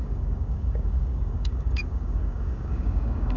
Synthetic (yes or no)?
yes